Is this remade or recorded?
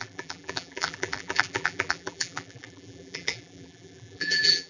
remade